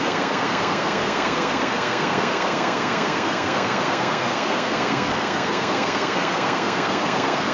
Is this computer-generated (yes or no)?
yes